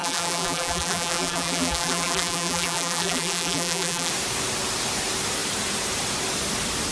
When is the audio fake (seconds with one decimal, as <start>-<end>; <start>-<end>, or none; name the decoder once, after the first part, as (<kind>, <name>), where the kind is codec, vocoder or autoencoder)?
0.0-4.1 (vocoder, BigVGAN v2)